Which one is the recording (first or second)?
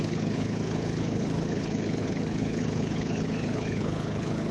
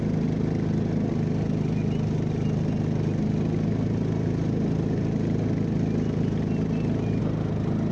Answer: second